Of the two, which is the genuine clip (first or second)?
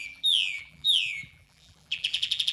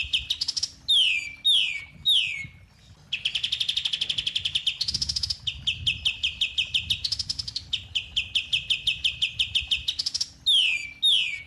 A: second